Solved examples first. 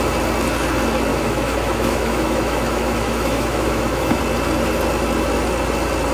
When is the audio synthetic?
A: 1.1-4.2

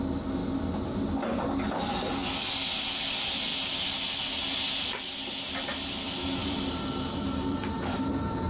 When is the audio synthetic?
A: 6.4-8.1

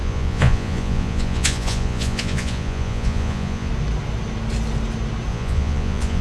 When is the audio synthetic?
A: 0.0-3.7; 5.3-6.2

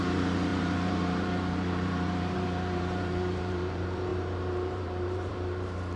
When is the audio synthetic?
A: 0.0-6.0